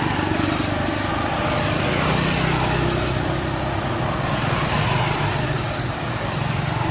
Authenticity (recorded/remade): recorded